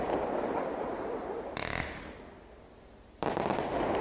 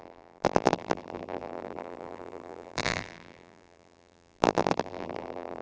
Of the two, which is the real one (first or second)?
first